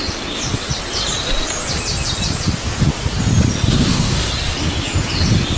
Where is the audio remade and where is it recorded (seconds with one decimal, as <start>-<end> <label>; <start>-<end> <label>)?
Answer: 0.0-3.7 recorded; 3.7-4.3 remade; 4.3-5.6 recorded